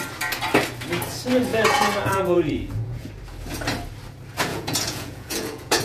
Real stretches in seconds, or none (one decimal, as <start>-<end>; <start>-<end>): 0.0-1.5; 3.1-4.5